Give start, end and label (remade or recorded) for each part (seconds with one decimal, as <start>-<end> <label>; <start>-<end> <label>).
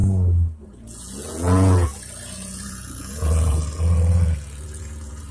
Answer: 0.0-0.6 recorded; 0.6-5.3 remade